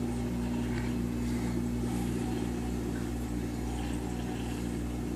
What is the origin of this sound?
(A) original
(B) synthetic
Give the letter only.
A